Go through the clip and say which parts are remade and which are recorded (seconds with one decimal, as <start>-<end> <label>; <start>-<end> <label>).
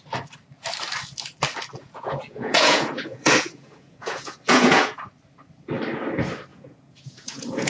0.0-1.8 recorded; 1.8-5.0 remade; 5.0-6.5 recorded; 6.5-7.7 remade